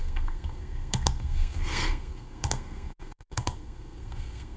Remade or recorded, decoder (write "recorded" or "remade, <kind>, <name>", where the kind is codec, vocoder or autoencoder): remade, codec, SNAC